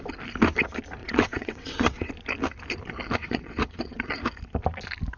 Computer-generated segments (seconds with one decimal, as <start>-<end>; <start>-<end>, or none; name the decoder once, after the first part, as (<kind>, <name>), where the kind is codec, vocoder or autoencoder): 1.0-2.1 (vocoder, WaveNeXt); 3.2-4.2